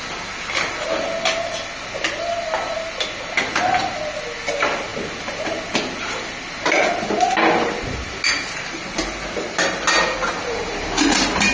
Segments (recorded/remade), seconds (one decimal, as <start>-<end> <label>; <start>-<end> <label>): 0.0-11.5 recorded